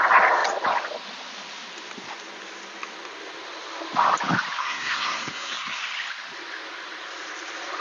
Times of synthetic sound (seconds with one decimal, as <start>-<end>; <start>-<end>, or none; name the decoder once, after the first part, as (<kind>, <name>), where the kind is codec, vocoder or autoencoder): 4.6-5.8 (codec, SNAC)